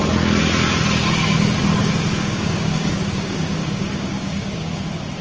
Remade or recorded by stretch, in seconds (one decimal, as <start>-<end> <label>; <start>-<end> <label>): 0.0-2.1 recorded; 2.1-4.8 remade; 4.8-5.2 recorded